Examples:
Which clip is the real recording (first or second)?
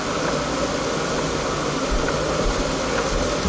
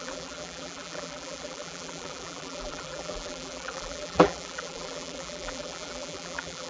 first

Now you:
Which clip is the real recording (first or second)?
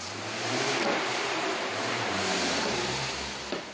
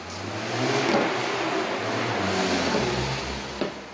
second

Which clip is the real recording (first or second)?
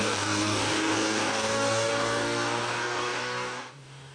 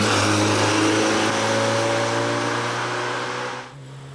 second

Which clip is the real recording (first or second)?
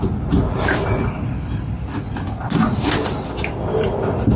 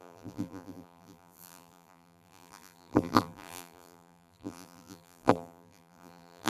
first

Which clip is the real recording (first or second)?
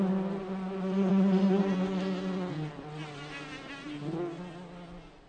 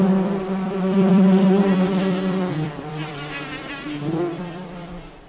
first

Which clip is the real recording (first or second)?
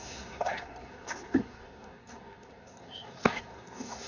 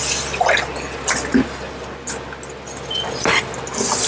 second